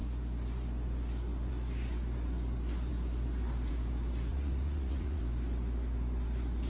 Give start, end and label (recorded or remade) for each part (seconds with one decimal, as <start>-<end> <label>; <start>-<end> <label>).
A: 0.0-4.3 recorded; 4.3-5.2 remade; 5.2-6.7 recorded